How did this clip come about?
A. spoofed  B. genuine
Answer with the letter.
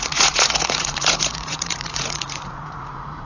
A